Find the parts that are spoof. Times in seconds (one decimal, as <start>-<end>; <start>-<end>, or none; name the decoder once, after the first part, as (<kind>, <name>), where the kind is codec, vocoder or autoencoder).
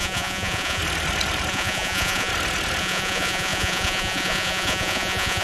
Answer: 0.0-0.8 (vocoder, Vocos); 1.5-2.3; 2.8-5.4